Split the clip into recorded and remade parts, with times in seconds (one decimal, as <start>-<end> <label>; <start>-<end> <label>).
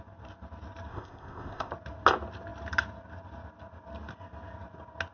0.0-0.9 recorded; 0.9-1.7 remade; 1.7-5.1 recorded